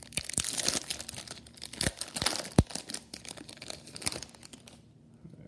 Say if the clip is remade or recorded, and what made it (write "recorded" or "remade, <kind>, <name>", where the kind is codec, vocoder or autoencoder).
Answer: recorded